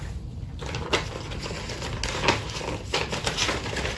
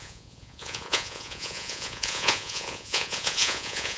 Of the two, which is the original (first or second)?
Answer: first